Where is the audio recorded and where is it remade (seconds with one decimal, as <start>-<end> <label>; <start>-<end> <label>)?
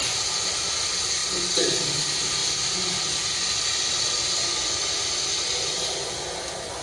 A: 0.0-6.8 recorded